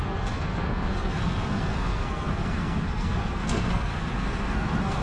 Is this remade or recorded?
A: remade